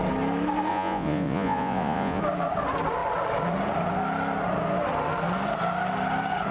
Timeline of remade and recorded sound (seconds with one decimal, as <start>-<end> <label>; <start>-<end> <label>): 0.0-0.7 recorded; 0.7-2.2 remade; 2.2-6.5 recorded